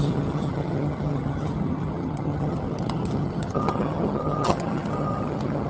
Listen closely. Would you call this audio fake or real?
fake